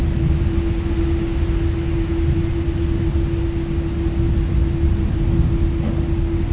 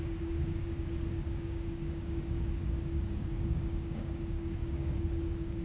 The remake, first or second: second